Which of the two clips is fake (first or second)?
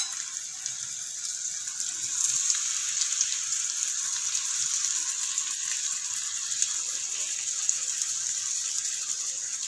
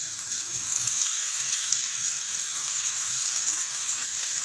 second